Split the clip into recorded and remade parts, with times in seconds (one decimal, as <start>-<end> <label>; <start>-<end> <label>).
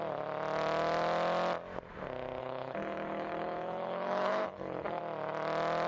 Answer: 0.0-2.4 recorded; 2.4-5.0 remade; 5.0-5.9 recorded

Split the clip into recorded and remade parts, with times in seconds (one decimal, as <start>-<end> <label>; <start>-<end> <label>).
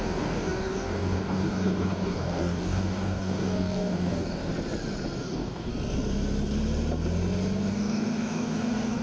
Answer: 0.0-4.5 remade; 4.5-5.2 recorded; 5.2-5.7 remade; 5.7-7.7 recorded; 7.7-9.0 remade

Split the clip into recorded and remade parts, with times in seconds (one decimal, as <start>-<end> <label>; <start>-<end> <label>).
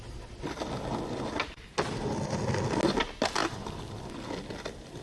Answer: 0.0-5.0 recorded